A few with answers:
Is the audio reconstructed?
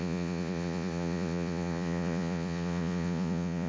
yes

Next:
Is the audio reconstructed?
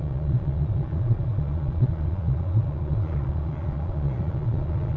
yes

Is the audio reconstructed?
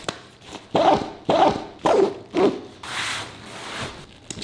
no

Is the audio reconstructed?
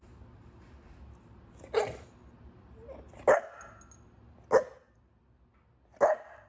no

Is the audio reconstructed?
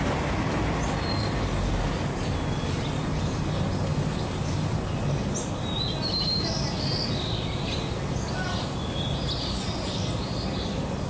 no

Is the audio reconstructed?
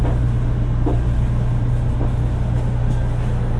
no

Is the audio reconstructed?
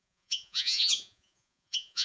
yes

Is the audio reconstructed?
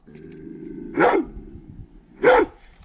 no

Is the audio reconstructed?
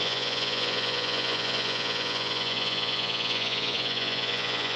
yes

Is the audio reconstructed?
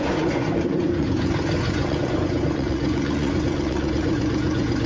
yes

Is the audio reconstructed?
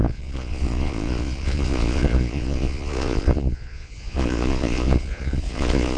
yes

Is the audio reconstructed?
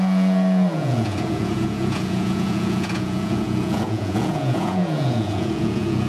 yes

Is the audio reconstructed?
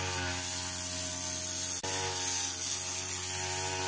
no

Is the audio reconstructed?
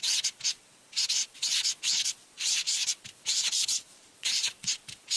yes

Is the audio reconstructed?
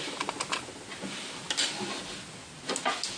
no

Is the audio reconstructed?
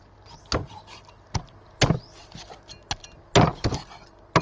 no